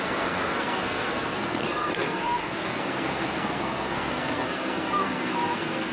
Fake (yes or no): yes